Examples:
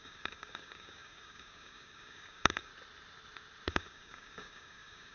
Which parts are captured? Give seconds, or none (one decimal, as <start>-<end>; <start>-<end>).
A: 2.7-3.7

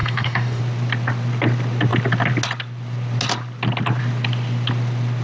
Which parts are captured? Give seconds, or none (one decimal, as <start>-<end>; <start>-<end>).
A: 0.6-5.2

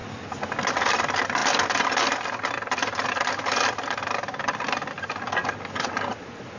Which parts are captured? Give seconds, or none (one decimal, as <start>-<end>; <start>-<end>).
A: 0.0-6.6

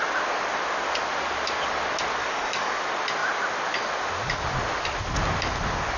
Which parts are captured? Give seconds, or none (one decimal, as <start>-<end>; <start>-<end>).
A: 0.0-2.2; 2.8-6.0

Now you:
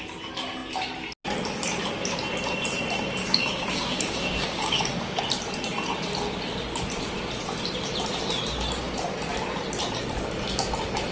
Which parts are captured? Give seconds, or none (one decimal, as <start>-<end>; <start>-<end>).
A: 0.0-3.2; 5.2-11.1

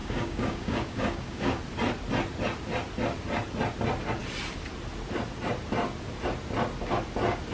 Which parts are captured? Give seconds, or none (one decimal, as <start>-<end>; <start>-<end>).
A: 1.6-7.5

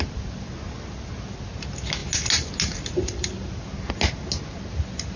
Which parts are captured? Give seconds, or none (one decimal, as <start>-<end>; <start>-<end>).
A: 0.0-5.2